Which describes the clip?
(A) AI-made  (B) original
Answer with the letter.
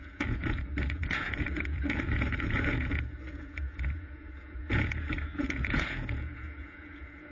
A